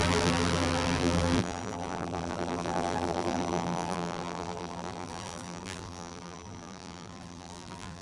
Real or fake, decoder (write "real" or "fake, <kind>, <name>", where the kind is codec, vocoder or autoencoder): fake, vocoder, BigVGAN v2